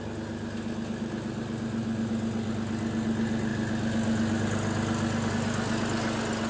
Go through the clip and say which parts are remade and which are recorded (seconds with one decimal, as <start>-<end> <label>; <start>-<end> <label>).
0.0-6.5 recorded